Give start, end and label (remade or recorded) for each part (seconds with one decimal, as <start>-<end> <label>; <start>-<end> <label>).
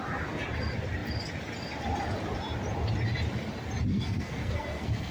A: 0.0-3.9 recorded; 3.9-5.1 remade